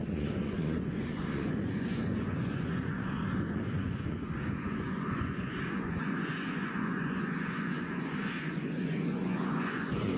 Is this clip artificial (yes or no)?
yes